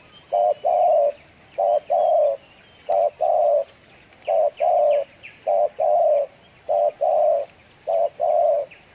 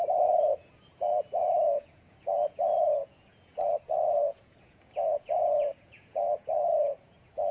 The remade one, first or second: second